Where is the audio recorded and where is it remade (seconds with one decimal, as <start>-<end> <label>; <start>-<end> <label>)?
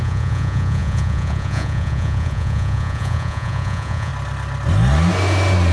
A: 0.0-4.1 remade; 4.1-5.7 recorded